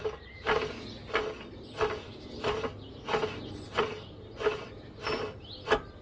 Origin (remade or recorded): recorded